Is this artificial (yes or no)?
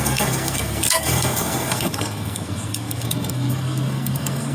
yes